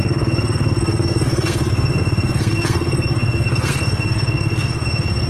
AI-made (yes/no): yes